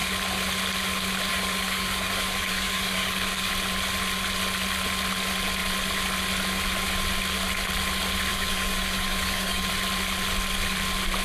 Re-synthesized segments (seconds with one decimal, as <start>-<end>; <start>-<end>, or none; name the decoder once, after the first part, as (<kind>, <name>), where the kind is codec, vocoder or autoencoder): 1.3-3.5 (codec, DAC); 8.3-9.7